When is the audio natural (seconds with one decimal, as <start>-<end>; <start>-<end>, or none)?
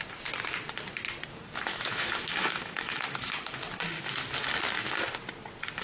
0.0-1.7; 3.3-5.8